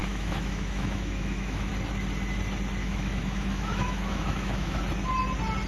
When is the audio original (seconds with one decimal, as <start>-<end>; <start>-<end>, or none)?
1.7-2.8; 4.8-5.7